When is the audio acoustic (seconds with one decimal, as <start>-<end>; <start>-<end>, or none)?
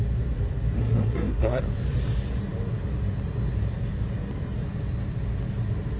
0.0-0.8; 1.6-6.0